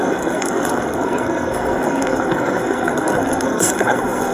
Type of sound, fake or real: fake